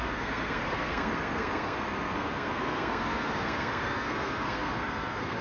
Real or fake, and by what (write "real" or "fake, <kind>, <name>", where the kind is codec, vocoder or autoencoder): fake, codec, SNAC